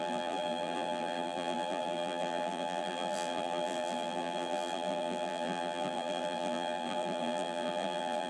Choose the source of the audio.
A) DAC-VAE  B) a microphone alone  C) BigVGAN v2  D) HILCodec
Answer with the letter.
C